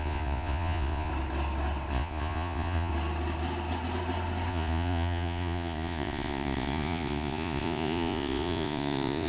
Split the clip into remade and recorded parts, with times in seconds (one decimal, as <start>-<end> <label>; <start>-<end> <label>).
0.0-1.1 remade; 1.1-1.9 recorded; 1.9-2.9 remade; 2.9-4.5 recorded; 4.5-9.3 remade